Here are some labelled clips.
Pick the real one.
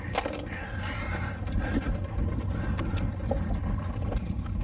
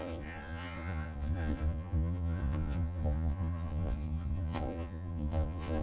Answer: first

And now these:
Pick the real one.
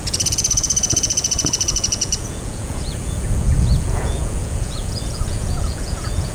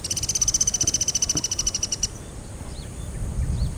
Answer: second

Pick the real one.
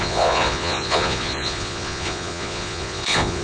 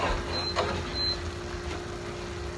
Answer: second